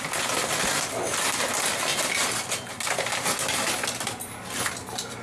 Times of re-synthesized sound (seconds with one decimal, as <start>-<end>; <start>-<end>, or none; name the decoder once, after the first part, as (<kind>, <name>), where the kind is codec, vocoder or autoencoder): none